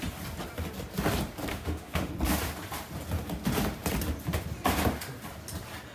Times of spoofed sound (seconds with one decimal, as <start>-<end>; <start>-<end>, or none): 1.5-2.1